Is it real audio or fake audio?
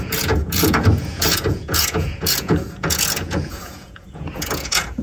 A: fake